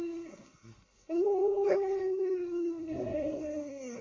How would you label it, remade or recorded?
remade